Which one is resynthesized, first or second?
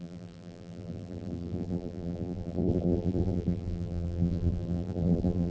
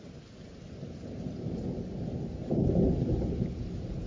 first